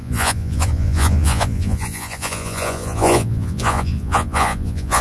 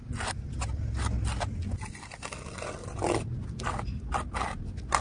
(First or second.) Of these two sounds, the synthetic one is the first